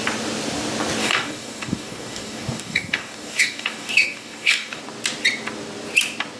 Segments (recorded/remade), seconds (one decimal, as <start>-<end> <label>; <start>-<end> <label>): 0.0-1.0 recorded; 1.0-4.8 remade; 4.8-6.4 recorded